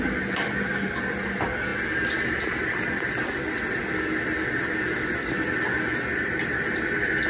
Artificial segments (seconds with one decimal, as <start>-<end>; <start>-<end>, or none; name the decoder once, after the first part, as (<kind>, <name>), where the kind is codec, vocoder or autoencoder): none